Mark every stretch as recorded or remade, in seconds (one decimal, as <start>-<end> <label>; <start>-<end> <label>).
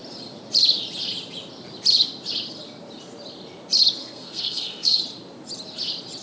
0.0-4.0 recorded; 4.0-5.0 remade; 5.0-6.2 recorded